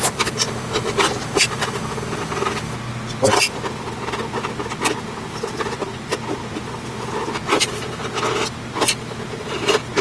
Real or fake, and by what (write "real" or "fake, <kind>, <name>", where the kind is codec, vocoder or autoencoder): real